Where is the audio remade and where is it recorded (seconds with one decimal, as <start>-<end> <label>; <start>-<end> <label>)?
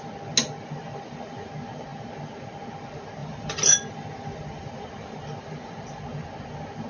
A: 0.0-0.8 recorded; 0.8-1.5 remade; 1.5-3.2 recorded; 3.2-6.0 remade; 6.0-6.9 recorded